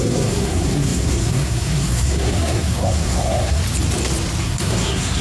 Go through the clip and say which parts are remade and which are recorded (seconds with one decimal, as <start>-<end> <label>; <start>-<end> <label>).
0.0-3.6 remade; 3.6-4.4 recorded; 4.4-5.2 remade